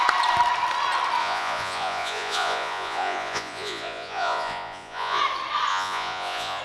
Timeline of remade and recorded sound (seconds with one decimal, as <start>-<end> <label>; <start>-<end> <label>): 0.0-1.2 recorded; 1.2-5.2 remade; 5.2-5.7 recorded; 5.7-6.6 remade